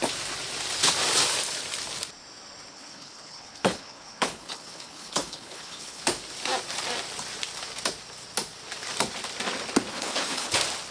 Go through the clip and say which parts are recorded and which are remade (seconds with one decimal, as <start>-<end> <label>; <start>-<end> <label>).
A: 0.0-2.7 recorded; 2.7-6.0 remade; 6.0-9.9 recorded; 9.9-10.5 remade; 10.5-10.9 recorded